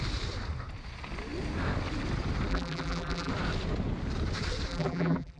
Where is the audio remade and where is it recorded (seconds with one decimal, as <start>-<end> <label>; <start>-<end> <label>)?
0.0-2.5 recorded; 2.5-3.3 remade; 3.3-4.7 recorded; 4.7-5.4 remade